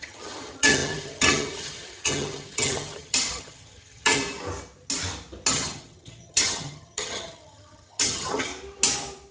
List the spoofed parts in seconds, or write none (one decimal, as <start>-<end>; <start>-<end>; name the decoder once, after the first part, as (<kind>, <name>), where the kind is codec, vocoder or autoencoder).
0.0-4.2 (vocoder, HiFi-GAN); 5.5-8.5

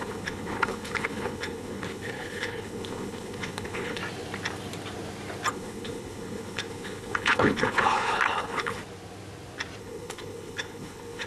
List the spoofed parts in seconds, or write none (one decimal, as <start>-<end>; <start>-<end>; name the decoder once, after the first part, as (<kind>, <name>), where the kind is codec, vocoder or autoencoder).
0.0-4.0 (codec, HILCodec); 5.5-8.8; 9.8-11.3

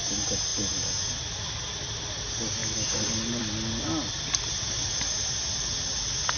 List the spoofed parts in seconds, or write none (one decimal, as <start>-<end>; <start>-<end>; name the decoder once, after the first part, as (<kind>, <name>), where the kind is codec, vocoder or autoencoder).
none

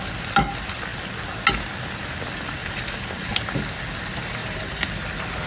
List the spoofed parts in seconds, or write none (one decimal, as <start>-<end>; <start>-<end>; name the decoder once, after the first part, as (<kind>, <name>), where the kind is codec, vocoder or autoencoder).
2.6-3.3 (vocoder, BigVGAN v2); 4.4-4.9

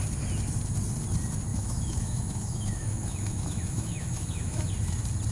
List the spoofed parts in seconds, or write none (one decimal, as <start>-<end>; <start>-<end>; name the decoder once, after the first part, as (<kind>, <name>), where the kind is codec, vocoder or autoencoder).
1.5-4.7 (autoencoder, DAC-VAE)

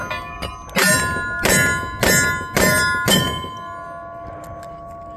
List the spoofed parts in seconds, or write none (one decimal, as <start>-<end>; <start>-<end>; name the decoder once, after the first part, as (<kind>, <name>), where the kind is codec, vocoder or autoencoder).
none

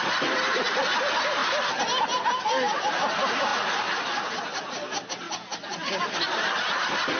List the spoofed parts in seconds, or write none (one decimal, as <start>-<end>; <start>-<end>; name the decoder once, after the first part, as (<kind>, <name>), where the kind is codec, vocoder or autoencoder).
none